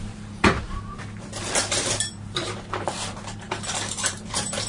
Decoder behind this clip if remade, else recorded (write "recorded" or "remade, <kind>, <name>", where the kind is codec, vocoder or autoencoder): remade, vocoder, BigVGAN v2